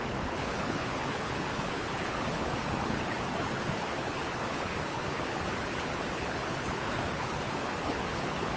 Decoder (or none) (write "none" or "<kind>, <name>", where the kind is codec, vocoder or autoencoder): codec, HILCodec